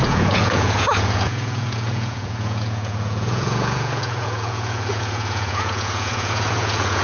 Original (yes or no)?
no